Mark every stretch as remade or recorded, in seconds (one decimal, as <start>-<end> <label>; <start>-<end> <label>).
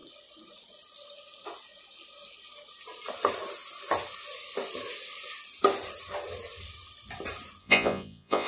0.0-7.6 recorded; 7.6-8.5 remade